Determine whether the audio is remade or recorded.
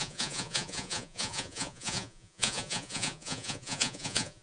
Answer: remade